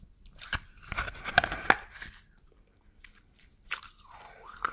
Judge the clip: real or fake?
real